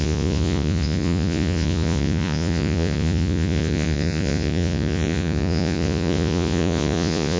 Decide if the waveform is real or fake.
fake